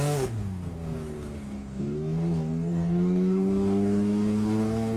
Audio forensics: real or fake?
fake